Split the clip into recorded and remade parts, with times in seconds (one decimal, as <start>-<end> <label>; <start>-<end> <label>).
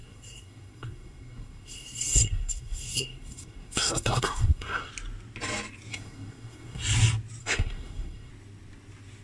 0.0-4.9 remade; 4.9-5.9 recorded; 5.9-6.8 remade; 6.8-7.4 recorded; 7.4-8.3 remade; 8.3-9.2 recorded